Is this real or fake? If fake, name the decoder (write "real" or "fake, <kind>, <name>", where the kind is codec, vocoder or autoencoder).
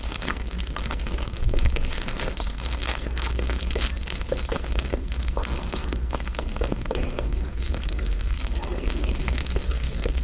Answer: fake, codec, SNAC